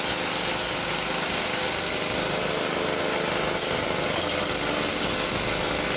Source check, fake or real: real